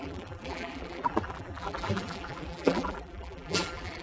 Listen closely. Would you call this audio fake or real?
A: fake